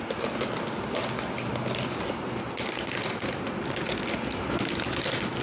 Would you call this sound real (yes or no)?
yes